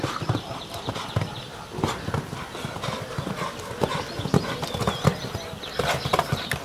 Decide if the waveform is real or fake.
real